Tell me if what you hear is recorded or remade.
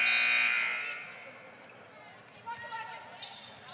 recorded